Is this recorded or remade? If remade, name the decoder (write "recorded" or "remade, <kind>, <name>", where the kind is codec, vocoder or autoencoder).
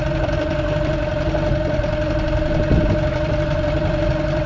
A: remade, vocoder, BigVGAN v2